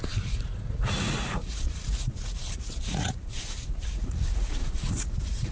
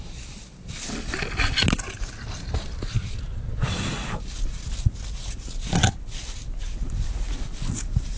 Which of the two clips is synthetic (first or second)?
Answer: first